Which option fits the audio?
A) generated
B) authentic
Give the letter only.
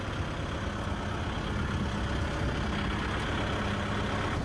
B